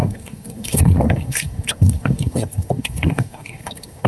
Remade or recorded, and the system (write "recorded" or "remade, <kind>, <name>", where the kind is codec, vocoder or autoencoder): remade, codec, SNAC